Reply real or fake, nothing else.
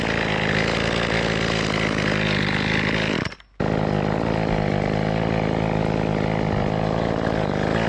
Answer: real